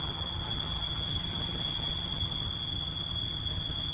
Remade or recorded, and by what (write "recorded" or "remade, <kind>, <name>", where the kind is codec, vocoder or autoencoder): remade, vocoder, HiFi-GAN